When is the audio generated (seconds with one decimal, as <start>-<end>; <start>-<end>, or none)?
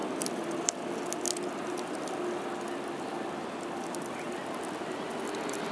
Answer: none